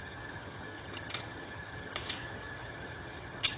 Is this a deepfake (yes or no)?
yes